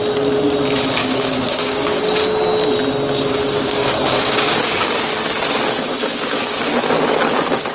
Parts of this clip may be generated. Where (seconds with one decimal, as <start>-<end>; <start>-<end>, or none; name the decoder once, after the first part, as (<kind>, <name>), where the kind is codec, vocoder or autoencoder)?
1.0-2.2 (codec, DAC); 3.4-4.9; 5.8-6.5